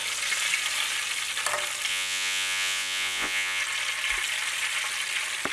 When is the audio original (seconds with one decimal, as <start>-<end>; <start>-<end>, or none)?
0.0-1.9; 3.6-5.5